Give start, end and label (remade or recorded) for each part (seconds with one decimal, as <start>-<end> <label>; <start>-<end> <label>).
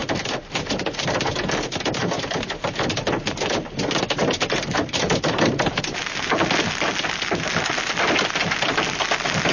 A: 0.0-0.8 remade; 0.8-2.0 recorded; 2.0-3.8 remade; 3.8-4.2 recorded; 4.2-6.0 remade; 6.0-9.5 recorded